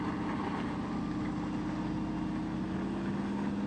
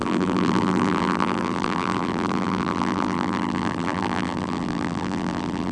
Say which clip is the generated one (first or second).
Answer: second